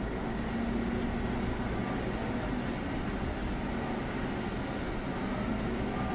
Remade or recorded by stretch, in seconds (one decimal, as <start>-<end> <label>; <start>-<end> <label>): 0.0-6.1 recorded